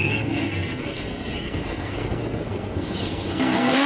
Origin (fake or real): fake